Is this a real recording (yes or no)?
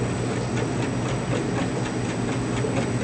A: yes